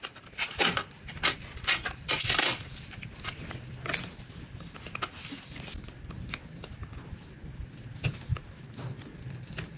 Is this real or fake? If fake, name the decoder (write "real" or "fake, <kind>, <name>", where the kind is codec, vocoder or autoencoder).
real